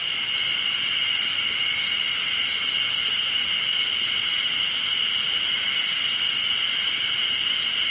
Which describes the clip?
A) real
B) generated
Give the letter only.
A